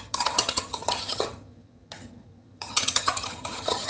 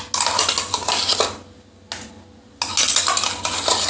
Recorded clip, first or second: second